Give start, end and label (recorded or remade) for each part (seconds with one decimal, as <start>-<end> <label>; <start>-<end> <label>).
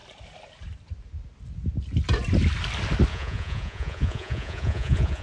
0.0-3.1 recorded; 3.1-5.2 remade